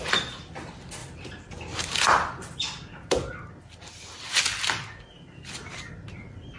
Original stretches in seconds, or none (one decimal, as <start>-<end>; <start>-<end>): 0.0-6.6